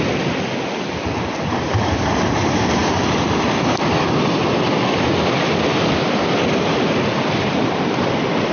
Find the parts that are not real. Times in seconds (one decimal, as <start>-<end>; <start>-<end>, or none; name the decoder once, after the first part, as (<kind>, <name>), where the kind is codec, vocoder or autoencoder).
2.8-4.2 (vocoder, BigVGAN v2)